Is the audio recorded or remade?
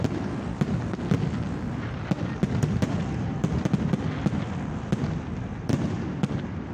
recorded